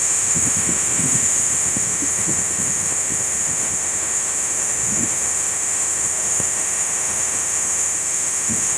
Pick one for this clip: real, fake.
fake